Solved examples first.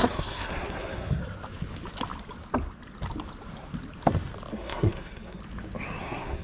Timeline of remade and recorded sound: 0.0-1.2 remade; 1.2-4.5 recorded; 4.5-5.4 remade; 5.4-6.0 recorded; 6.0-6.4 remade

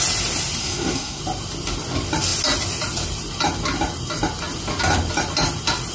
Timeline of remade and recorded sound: 0.0-0.6 recorded; 0.6-1.2 remade; 1.2-5.9 recorded